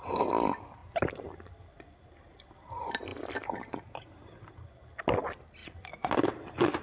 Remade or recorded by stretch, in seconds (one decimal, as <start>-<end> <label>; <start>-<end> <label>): 0.0-0.8 recorded; 0.8-2.7 remade; 2.7-5.6 recorded; 5.6-6.1 remade; 6.1-6.8 recorded